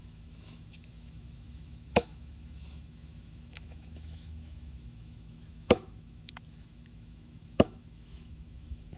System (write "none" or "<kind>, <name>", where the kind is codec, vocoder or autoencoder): autoencoder, DAC-VAE